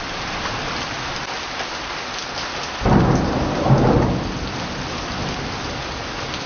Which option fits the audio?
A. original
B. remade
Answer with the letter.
A